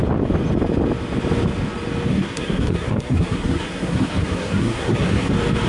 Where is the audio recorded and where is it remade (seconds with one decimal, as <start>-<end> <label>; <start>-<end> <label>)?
0.0-2.1 recorded; 2.1-5.3 remade; 5.3-5.7 recorded

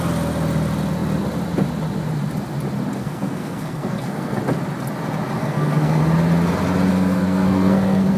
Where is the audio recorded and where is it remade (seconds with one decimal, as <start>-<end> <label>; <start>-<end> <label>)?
0.0-2.9 recorded; 2.9-4.4 remade; 4.4-5.4 recorded; 5.4-6.0 remade; 6.0-6.9 recorded; 6.9-8.2 remade

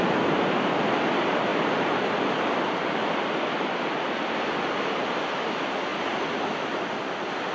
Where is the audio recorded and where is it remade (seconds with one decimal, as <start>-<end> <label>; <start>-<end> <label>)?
0.0-1.5 recorded; 1.5-4.7 remade; 4.7-7.5 recorded